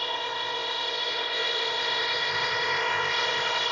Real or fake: fake